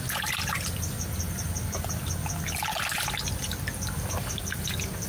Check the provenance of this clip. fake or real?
real